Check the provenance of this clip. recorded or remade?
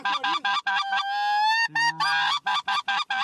recorded